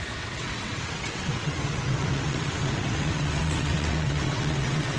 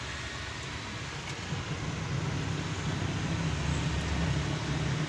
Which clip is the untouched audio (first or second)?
second